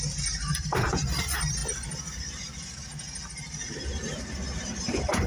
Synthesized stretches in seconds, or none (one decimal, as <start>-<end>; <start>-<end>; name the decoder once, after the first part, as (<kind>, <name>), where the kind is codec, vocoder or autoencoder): 0.0-1.6 (vocoder, BigVGAN v2); 4.8-5.3